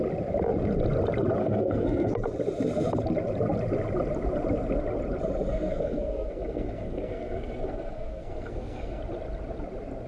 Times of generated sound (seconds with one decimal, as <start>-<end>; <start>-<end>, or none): 1.4-2.1; 5.5-9.0